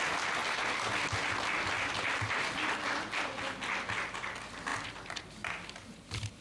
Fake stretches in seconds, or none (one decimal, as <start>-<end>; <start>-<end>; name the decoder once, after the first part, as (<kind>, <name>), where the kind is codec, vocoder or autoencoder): none